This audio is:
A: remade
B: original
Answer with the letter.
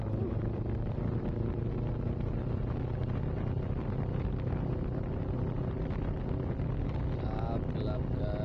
B